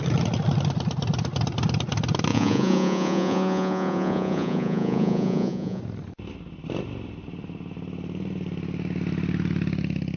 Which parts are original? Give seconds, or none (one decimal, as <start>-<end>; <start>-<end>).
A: 0.0-2.3; 5.8-10.2